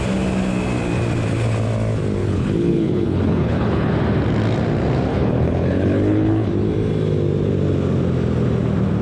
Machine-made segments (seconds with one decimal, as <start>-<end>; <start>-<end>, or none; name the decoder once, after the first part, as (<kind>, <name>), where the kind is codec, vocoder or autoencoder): 2.2-3.9 (codec, HILCodec); 5.1-6.5